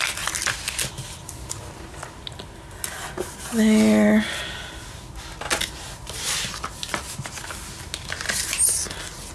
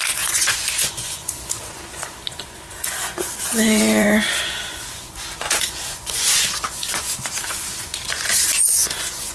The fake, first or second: second